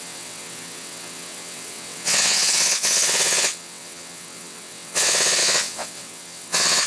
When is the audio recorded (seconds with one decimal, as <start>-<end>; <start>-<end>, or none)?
none